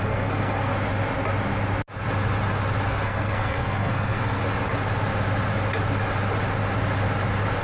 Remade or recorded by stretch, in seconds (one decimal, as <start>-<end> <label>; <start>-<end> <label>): 0.0-0.7 remade; 0.7-2.9 recorded; 2.9-4.4 remade; 4.4-7.6 recorded